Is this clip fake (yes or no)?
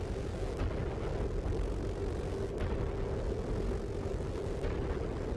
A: no